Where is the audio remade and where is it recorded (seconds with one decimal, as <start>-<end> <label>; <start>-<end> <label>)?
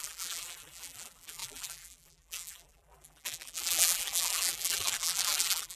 0.0-5.8 remade